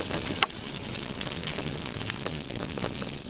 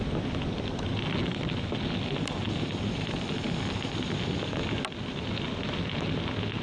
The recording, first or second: second